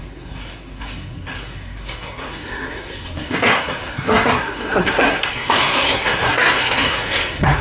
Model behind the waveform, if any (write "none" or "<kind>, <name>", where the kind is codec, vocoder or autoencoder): codec, SNAC